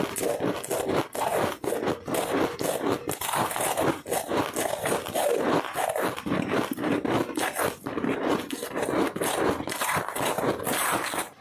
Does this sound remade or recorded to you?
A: recorded